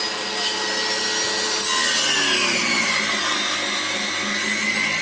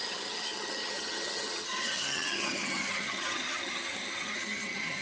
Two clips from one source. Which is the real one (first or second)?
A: first